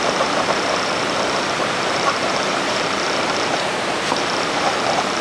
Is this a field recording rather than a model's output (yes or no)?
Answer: no